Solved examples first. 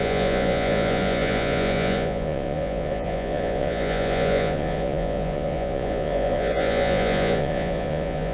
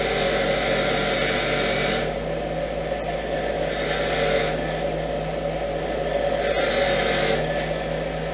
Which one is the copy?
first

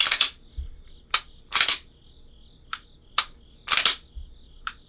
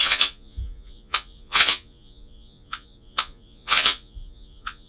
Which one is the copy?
second